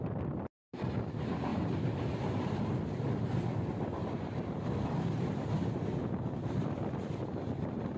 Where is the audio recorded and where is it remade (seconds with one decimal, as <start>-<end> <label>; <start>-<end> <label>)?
0.0-8.0 recorded

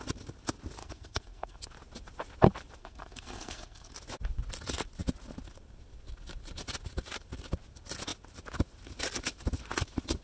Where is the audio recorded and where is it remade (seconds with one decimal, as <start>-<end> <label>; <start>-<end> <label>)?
0.0-0.8 recorded; 0.8-1.6 remade; 1.6-2.8 recorded; 2.8-3.9 remade; 3.9-10.2 recorded